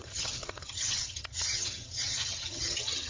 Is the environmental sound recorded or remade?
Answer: remade